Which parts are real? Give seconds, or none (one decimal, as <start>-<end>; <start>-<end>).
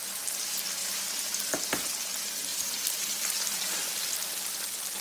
0.0-0.8; 2.0-2.5; 4.0-5.0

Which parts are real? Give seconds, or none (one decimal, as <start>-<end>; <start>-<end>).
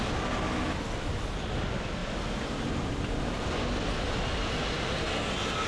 0.0-2.0; 2.9-4.6; 5.1-5.7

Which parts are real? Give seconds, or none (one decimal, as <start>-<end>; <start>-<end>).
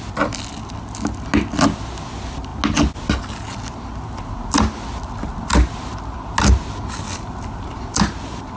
0.0-8.6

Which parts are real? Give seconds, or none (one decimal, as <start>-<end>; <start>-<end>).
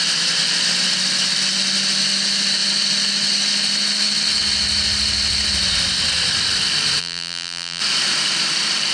0.0-7.0; 7.8-8.9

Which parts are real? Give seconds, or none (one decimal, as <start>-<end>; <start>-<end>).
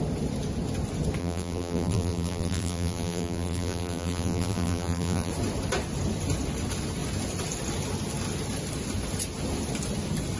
0.0-1.2; 5.3-10.4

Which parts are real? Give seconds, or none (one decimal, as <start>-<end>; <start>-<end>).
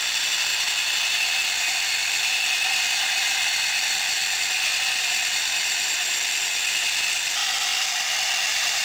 0.0-8.8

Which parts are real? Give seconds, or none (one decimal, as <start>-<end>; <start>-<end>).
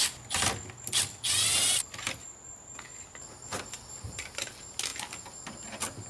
0.0-6.1